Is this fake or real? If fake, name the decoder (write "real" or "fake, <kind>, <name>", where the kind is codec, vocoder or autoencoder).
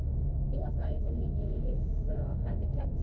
fake, autoencoder, DAC-VAE